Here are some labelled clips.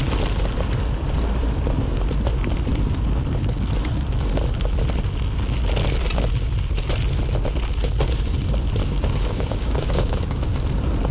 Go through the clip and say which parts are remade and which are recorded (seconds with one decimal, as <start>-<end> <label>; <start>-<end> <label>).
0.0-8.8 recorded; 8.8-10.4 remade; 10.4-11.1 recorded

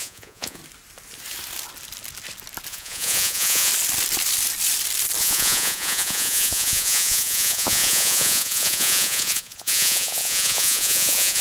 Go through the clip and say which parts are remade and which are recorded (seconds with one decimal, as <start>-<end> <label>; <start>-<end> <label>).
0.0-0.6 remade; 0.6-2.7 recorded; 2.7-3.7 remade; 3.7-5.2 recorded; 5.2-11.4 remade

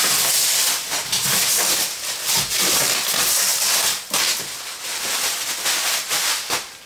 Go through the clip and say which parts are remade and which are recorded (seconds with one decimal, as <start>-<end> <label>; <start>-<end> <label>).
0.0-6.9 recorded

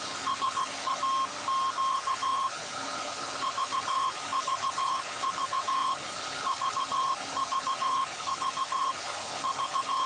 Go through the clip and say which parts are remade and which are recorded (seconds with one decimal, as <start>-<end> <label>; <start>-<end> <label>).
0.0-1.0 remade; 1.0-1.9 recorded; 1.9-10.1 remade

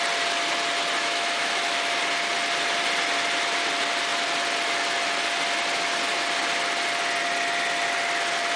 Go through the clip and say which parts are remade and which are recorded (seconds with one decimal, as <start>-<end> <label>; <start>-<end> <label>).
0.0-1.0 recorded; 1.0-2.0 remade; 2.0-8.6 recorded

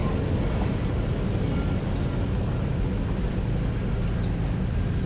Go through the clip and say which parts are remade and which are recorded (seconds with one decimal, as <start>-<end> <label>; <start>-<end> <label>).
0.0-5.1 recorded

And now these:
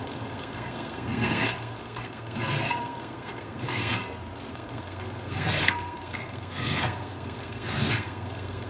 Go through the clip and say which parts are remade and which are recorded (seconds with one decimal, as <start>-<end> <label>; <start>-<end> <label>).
0.0-4.0 remade; 4.0-4.5 recorded; 4.5-8.7 remade